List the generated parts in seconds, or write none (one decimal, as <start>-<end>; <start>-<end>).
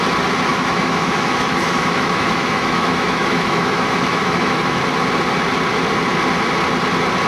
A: 0.5-4.9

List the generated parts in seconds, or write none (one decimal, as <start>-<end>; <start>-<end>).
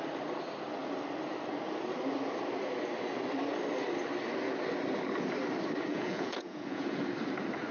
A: 5.9-7.0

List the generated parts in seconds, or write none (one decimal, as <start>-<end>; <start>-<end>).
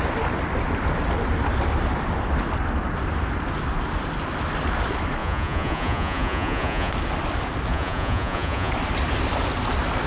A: 5.2-6.9; 7.7-8.7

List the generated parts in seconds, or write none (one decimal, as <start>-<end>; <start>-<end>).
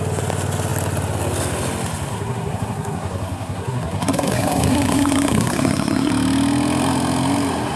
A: 2.1-6.1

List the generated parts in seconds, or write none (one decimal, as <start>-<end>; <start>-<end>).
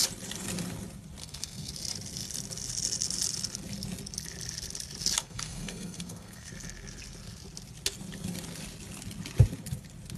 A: 1.2-1.7; 5.2-6.5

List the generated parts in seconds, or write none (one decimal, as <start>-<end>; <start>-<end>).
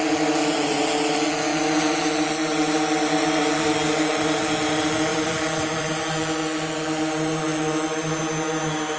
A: 5.1-6.1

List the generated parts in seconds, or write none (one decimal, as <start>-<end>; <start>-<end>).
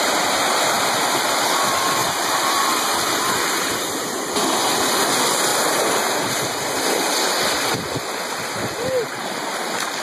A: none